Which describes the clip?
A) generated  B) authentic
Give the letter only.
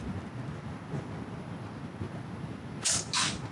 B